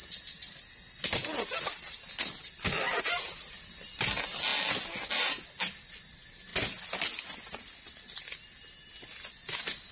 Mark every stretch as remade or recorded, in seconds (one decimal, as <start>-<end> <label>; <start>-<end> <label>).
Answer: 0.0-9.9 recorded